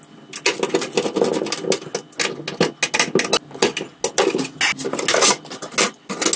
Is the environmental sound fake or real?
real